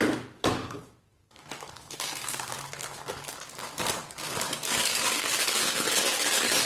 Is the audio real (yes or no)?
no